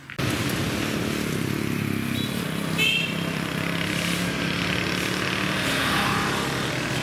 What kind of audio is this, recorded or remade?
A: recorded